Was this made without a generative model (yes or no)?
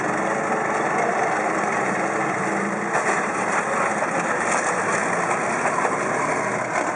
yes